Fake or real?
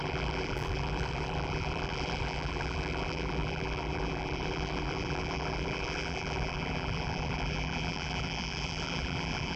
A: fake